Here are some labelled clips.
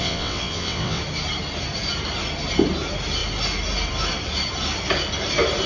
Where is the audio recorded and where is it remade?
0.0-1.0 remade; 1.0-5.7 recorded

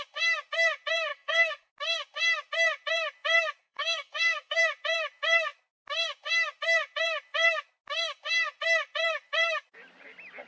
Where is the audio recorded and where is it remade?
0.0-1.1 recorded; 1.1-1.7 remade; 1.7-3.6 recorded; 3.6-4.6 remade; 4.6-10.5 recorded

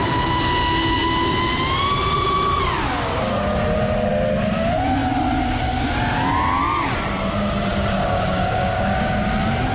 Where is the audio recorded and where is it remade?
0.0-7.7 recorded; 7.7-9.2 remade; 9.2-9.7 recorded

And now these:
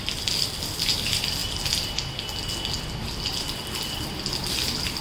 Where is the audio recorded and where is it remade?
0.0-5.0 recorded